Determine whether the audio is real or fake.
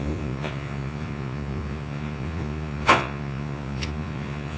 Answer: fake